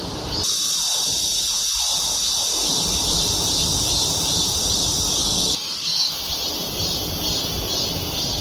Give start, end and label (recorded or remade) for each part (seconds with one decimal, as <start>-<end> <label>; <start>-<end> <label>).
0.0-5.2 recorded; 5.2-6.2 remade; 6.2-8.4 recorded